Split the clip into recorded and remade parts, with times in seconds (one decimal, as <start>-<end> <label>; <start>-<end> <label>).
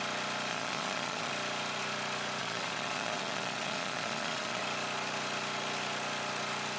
0.0-0.5 recorded; 0.5-1.3 remade; 1.3-2.4 recorded; 2.4-4.6 remade; 4.6-6.8 recorded